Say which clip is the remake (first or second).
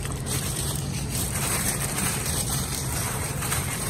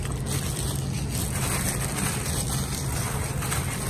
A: first